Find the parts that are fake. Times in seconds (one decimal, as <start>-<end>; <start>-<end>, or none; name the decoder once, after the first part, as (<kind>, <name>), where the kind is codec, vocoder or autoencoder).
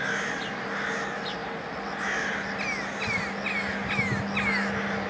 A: none